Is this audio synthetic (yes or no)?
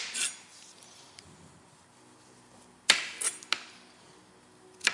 no